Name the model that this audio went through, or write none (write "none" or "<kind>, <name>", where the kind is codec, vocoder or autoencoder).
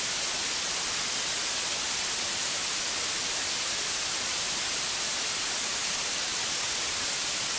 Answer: none